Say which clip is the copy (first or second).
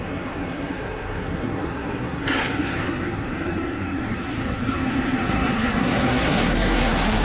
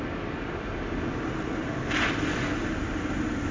first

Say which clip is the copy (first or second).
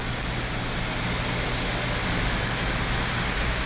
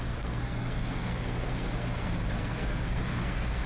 second